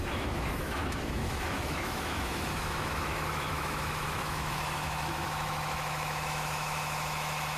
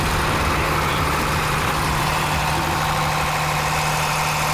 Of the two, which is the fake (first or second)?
first